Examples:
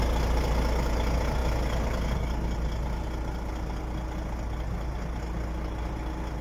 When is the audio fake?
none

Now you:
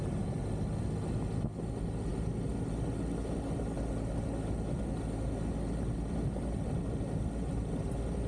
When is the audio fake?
none

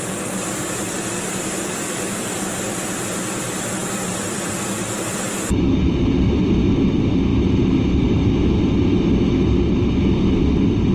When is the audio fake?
7.3-8.6 (vocoder, BigVGAN v2)

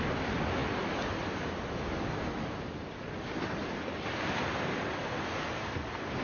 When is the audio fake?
none

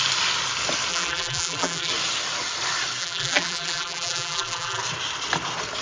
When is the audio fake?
0.9-1.9 (vocoder, BigVGAN v2); 3.0-4.8

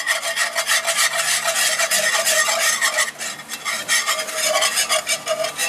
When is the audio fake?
none

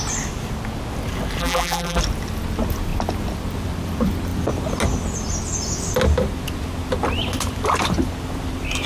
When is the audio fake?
1.4-2.0 (vocoder, BigVGAN v2)

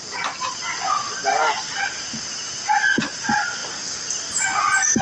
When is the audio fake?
3.0-3.6 (vocoder, BigVGAN v2)